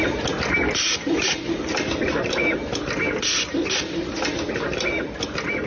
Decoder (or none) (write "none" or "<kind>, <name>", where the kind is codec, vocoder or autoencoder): none